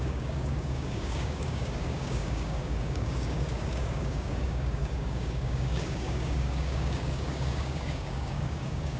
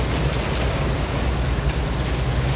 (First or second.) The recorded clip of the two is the second